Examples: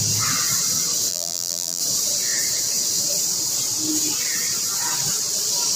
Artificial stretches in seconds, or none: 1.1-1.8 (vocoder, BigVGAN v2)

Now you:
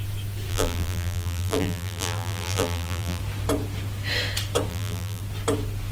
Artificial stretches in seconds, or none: 0.5-3.2 (vocoder, BigVGAN v2); 4.7-5.2

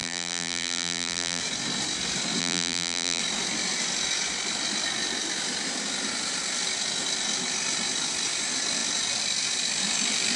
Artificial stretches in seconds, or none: 0.0-1.4 (vocoder, BigVGAN v2); 2.4-3.2

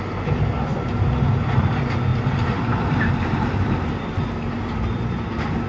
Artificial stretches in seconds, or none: 2.1-5.7 (vocoder, BigVGAN v2)

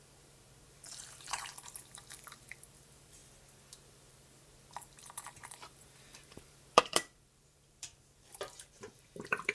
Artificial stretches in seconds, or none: 0.0-3.2 (vocoder, BigVGAN v2); 3.7-9.5

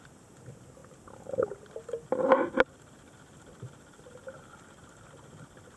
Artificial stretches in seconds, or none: none